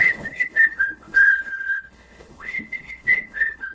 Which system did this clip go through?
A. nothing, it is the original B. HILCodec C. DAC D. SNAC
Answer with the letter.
B